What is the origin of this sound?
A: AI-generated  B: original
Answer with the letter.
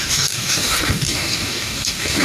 A